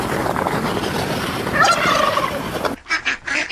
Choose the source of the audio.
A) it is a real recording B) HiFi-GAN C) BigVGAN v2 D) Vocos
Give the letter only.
A